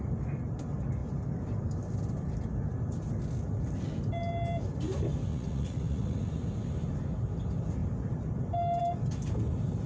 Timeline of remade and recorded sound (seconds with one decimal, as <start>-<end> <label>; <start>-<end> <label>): 0.0-5.3 recorded; 5.3-6.3 remade; 6.3-9.9 recorded

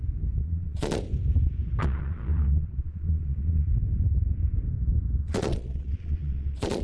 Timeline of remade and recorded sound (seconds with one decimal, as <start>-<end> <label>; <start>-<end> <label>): 0.0-0.4 recorded; 0.4-1.0 remade; 1.0-1.8 recorded; 1.8-3.7 remade; 3.7-5.2 recorded; 5.2-6.8 remade

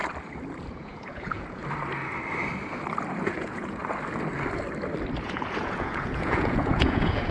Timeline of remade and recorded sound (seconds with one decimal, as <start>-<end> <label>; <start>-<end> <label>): 0.0-0.7 recorded; 0.7-1.6 remade; 1.6-3.2 recorded; 3.2-3.8 remade; 3.8-5.2 recorded; 5.2-7.3 remade

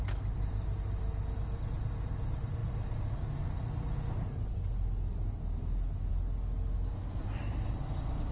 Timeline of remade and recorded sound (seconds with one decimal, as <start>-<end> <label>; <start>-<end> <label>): 0.0-8.3 recorded

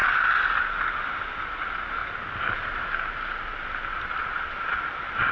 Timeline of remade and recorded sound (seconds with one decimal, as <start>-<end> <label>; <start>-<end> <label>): 0.0-4.2 recorded; 4.2-5.3 remade